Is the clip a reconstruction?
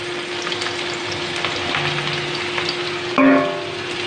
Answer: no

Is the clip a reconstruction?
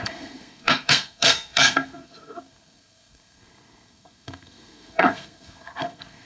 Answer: yes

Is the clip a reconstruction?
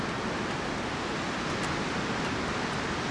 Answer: no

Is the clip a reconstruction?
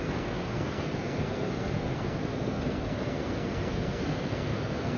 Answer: yes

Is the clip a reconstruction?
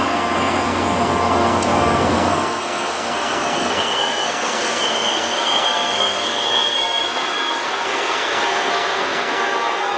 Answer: yes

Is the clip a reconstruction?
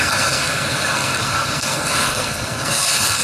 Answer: yes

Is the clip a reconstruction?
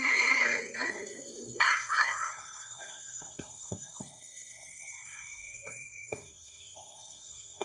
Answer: yes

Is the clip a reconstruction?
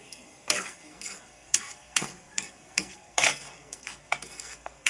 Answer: yes